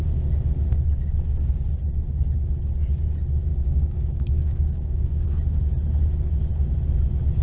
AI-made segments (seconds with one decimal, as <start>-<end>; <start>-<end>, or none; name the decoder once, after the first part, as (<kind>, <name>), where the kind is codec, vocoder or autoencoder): 3.5-5.3 (codec, DAC)